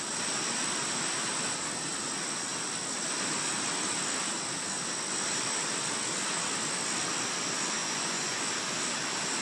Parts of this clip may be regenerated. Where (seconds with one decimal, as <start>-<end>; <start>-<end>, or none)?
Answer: 7.8-8.4